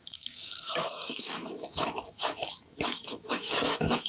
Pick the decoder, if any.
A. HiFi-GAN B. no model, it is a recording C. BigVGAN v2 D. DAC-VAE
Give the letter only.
D